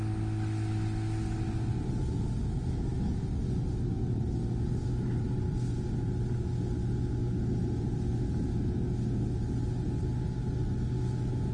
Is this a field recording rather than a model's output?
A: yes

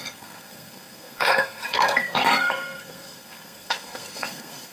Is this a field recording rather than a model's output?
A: no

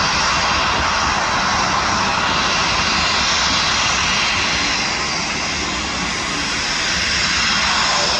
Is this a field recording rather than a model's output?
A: yes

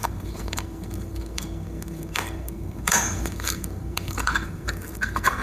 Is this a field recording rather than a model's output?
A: no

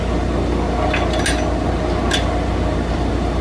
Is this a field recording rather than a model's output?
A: yes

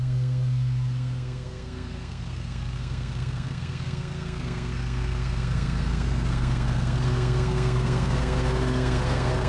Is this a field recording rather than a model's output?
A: no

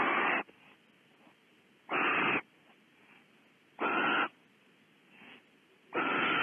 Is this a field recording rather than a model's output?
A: yes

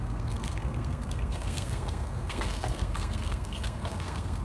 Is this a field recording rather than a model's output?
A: no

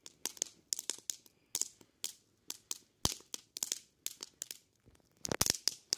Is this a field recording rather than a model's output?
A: yes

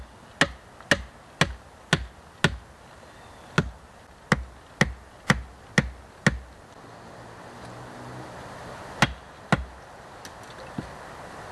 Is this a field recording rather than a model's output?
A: yes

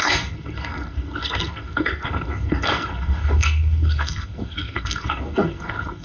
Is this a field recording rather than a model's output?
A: no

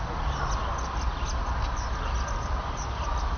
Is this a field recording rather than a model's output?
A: yes